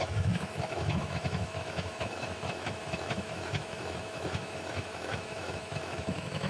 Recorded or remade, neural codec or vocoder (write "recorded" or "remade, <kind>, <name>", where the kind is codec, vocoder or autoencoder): remade, autoencoder, DAC-VAE